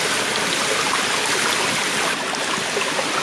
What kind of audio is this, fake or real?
real